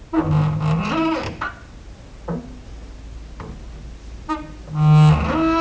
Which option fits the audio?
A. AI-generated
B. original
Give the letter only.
B